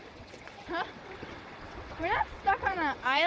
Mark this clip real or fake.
fake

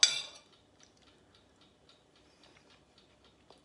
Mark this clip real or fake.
real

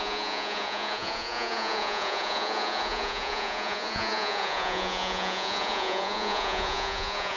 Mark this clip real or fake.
fake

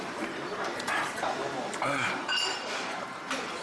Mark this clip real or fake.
fake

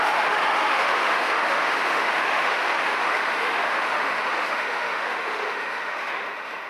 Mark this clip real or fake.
fake